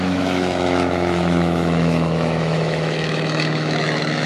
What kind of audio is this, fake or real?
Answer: fake